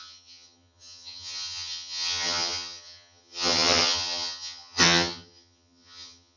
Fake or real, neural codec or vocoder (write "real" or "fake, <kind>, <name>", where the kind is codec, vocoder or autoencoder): fake, vocoder, HiFi-GAN